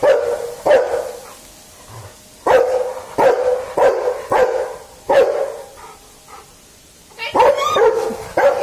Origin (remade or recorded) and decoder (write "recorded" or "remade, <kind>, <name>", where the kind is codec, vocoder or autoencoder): recorded